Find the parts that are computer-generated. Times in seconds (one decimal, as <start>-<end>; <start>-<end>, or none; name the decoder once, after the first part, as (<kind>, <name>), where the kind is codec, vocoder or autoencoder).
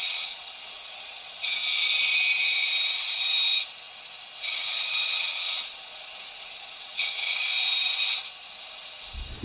0.0-1.6 (vocoder, Vocos); 4.4-7.4; 8.6-9.4